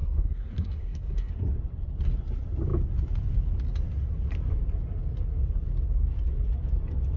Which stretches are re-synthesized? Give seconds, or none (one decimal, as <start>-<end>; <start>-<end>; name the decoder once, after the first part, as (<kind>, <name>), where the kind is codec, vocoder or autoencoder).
0.0-1.3 (codec, SNAC)